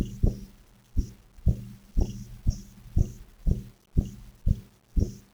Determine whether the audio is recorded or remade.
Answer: recorded